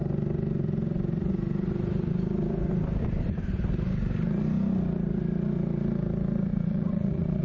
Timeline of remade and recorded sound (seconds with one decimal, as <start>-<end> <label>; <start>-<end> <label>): 0.0-6.5 recorded; 6.5-7.4 remade